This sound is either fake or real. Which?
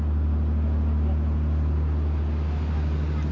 real